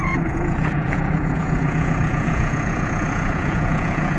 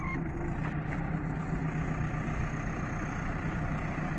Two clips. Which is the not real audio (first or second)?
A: first